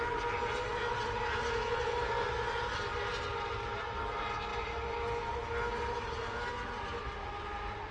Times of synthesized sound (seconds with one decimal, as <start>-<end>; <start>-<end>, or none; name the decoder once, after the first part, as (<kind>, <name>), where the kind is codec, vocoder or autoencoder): none

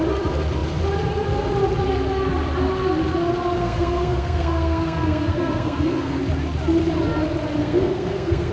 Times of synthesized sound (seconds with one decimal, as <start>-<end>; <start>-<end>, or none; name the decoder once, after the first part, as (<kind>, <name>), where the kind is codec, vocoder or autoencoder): 3.6-6.2 (codec, SNAC); 7.6-8.5

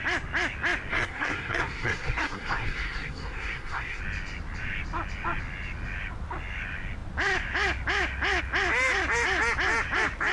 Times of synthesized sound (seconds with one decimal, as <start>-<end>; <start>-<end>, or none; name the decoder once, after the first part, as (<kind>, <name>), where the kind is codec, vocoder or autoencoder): 0.9-4.0 (codec, SNAC)